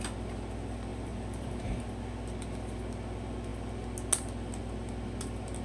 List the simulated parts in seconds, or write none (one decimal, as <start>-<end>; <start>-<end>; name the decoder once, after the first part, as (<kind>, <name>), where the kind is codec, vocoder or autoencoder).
0.9-1.8 (vocoder, BigVGAN v2)